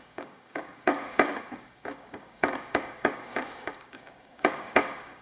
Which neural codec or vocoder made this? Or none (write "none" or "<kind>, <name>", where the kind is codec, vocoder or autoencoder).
codec, DAC